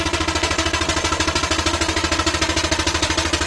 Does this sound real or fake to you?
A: real